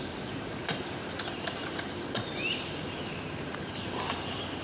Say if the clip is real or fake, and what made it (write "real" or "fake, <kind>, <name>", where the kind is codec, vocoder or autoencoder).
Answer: fake, vocoder, BigVGAN v2